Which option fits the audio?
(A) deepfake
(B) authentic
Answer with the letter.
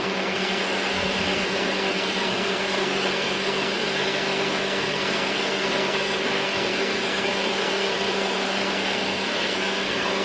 A